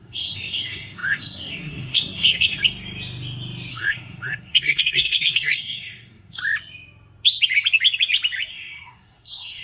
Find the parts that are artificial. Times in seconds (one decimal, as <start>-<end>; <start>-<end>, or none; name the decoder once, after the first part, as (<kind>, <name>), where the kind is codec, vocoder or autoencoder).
0.0-2.6 (codec, SNAC); 3.7-6.4; 8.5-9.6